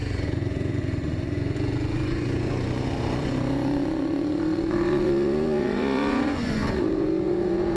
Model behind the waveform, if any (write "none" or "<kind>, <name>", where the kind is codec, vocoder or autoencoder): vocoder, Vocos